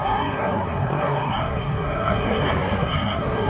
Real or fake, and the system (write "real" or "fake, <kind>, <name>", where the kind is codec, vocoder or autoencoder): fake, codec, SNAC